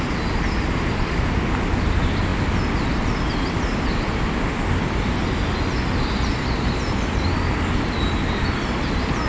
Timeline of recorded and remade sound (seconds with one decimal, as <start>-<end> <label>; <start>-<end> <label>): 0.0-9.3 recorded